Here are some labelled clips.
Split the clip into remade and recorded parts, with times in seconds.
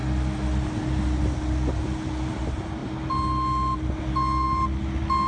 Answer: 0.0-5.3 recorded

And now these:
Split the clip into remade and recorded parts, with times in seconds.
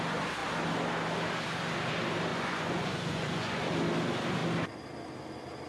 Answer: 0.0-2.3 recorded; 2.3-3.6 remade; 3.6-5.7 recorded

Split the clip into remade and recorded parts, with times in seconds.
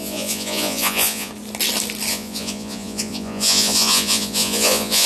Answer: 0.0-1.3 remade; 1.3-2.1 recorded; 2.1-5.1 remade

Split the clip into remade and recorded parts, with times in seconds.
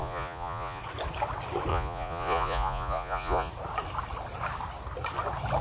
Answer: 0.0-0.8 remade; 0.8-1.7 recorded; 1.7-3.5 remade; 3.5-5.6 recorded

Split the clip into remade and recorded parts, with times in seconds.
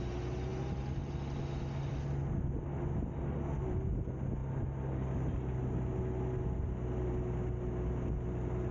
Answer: 0.0-8.7 recorded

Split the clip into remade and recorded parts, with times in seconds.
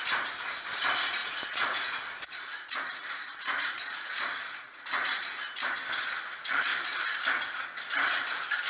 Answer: 0.0-1.2 recorded; 1.2-5.4 remade; 5.4-8.7 recorded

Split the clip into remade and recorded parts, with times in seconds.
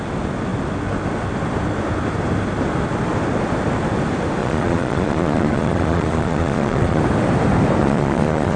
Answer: 0.0-4.4 recorded; 4.4-7.0 remade; 7.0-7.8 recorded; 7.8-8.6 remade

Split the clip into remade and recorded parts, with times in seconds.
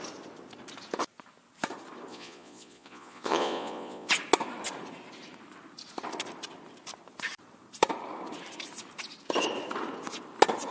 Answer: 0.0-2.1 recorded; 2.1-4.1 remade; 4.1-10.7 recorded